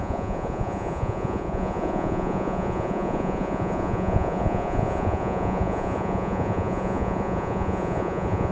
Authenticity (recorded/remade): remade